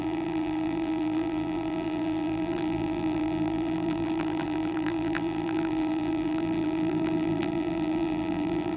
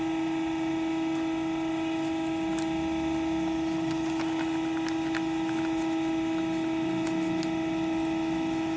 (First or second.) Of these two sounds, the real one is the second